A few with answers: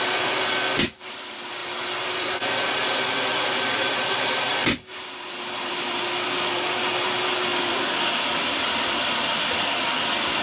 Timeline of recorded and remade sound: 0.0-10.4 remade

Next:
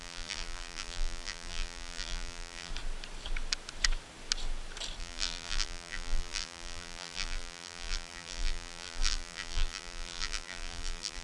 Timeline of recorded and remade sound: 0.0-2.7 remade; 2.7-5.0 recorded; 5.0-11.2 remade

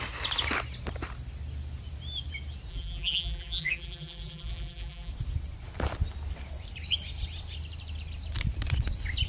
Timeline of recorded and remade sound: 0.0-2.7 recorded; 2.7-5.1 remade; 5.1-9.3 recorded

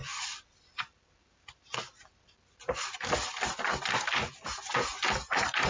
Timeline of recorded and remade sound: 0.0-2.1 remade; 2.1-5.7 recorded